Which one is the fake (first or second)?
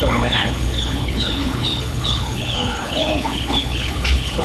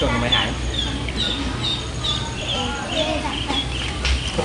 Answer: first